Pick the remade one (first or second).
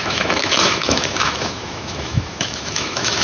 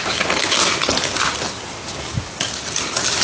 first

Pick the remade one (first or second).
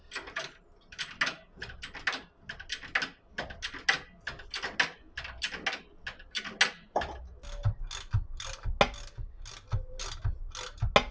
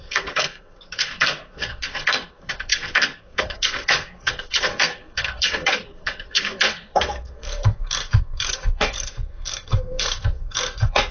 second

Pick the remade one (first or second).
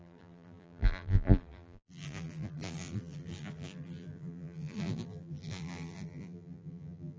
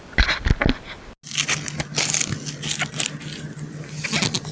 first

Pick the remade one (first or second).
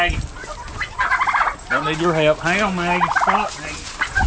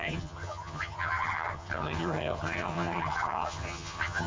second